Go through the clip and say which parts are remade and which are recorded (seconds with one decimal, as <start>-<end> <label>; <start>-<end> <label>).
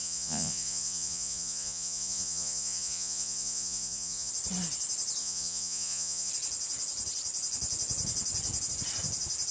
0.0-4.3 remade; 4.3-5.2 recorded; 5.2-6.3 remade; 6.3-9.5 recorded